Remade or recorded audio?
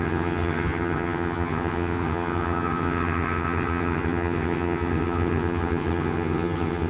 remade